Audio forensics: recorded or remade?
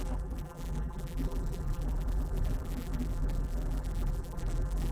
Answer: remade